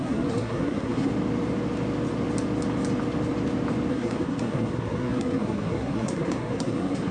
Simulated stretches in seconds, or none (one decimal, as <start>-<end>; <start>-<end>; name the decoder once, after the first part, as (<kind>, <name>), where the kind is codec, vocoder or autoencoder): 0.0-1.1 (codec, SNAC); 3.9-7.1